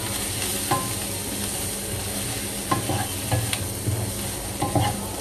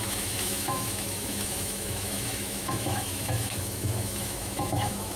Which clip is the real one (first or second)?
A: first